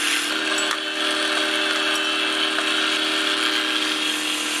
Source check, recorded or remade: recorded